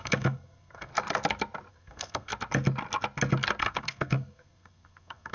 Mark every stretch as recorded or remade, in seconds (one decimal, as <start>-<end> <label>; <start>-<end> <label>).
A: 0.0-0.9 remade; 0.9-1.7 recorded; 1.7-2.3 remade; 2.3-3.6 recorded; 3.6-5.3 remade